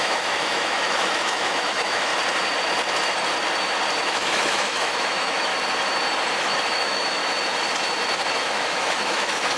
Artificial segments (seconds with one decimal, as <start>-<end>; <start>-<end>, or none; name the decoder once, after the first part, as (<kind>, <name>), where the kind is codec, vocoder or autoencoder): 0.0-2.1 (autoencoder, DAC-VAE); 4.0-5.5; 6.4-7.2; 8.4-9.6